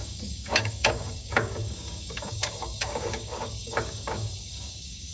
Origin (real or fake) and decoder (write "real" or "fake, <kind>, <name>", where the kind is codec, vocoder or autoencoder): fake, codec, DAC